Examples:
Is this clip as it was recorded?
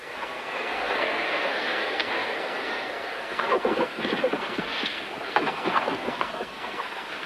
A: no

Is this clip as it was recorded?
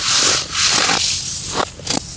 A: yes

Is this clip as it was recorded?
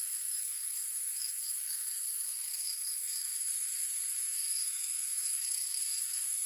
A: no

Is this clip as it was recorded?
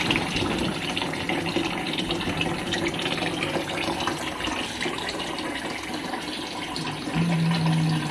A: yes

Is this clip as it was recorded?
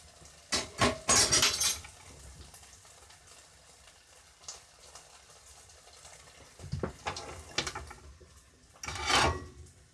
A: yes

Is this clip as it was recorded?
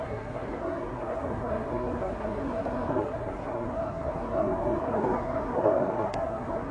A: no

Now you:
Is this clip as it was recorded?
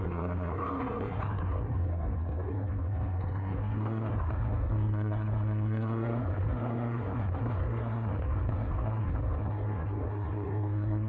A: no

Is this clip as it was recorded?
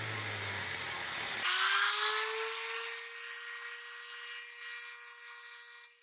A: yes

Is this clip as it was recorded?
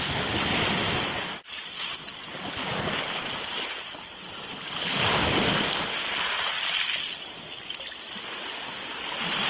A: yes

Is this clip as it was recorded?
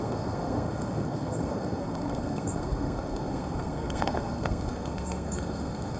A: no